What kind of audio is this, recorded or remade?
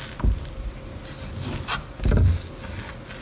recorded